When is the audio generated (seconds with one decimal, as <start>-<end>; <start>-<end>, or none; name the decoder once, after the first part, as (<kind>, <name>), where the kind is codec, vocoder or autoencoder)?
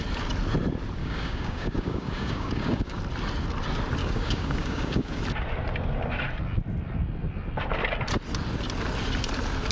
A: 1.0-3.0 (codec, DAC); 4.0-5.2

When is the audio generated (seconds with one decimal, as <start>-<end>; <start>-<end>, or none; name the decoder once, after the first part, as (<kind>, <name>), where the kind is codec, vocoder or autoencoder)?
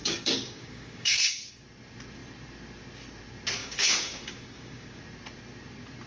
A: 0.0-1.5 (codec, DAC); 3.6-5.0